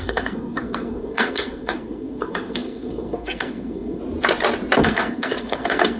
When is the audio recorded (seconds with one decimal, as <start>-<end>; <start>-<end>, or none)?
4.0-4.8